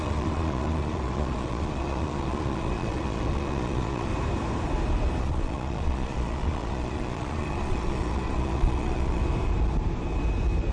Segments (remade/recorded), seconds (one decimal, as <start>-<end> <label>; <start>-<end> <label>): 0.0-4.1 remade; 4.1-5.2 recorded; 5.2-9.2 remade; 9.2-10.7 recorded